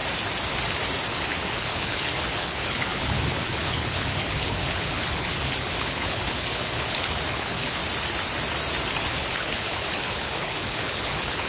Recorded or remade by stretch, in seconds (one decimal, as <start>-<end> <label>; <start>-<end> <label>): 0.0-1.1 recorded; 1.1-7.8 remade; 7.8-9.0 recorded; 9.0-11.5 remade